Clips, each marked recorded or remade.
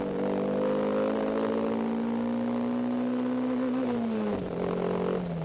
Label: recorded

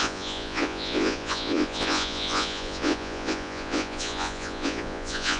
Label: remade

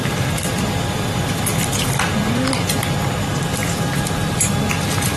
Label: recorded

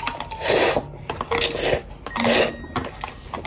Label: recorded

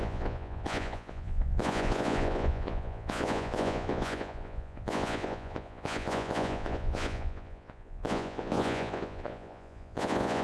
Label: remade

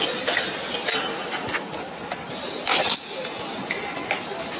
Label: recorded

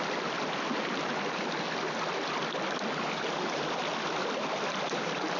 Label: recorded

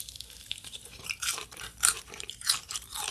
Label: remade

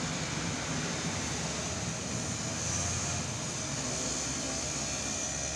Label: recorded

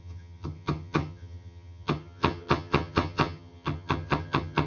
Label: remade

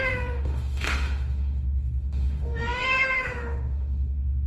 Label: remade